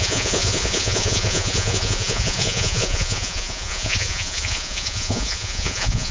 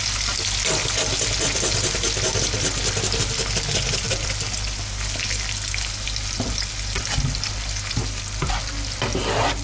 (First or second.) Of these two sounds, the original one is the second